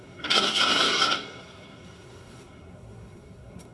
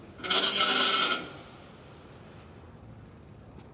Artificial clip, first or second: first